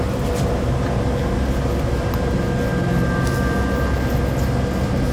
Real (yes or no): yes